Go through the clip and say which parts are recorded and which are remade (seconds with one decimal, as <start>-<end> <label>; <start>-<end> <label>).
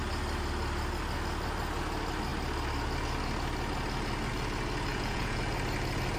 0.0-4.9 recorded; 4.9-5.4 remade; 5.4-6.2 recorded